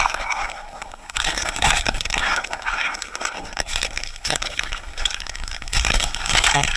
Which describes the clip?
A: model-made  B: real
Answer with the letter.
A